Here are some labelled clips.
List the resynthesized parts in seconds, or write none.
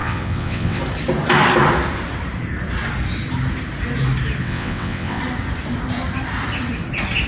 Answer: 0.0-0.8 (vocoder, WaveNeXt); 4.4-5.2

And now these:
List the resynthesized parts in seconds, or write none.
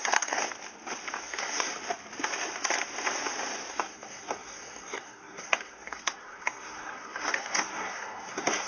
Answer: 0.0-0.4 (codec, SNAC); 1.2-1.7; 3.7-8.7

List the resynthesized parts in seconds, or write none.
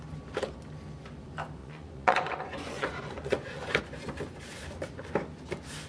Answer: 1.6-3.8 (vocoder, Vocos)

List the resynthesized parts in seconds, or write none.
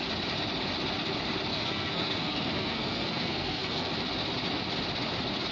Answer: 1.5-3.9 (codec, SNAC)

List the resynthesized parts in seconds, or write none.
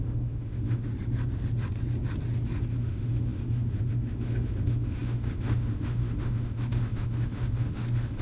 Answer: 0.0-0.9 (autoencoder, DAC-VAE); 2.8-8.2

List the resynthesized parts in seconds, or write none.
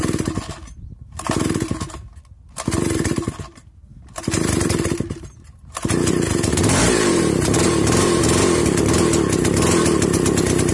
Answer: 6.5-8.2 (vocoder, BigVGAN v2)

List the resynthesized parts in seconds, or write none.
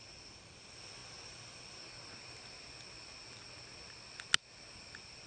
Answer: none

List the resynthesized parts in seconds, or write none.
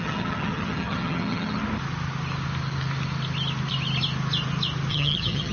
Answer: 0.0-1.6 (vocoder, HiFi-GAN); 4.9-5.5